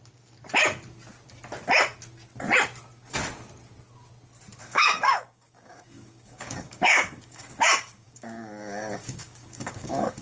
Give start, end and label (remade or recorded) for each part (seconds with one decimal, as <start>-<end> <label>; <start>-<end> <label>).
0.0-4.6 recorded; 4.6-10.2 remade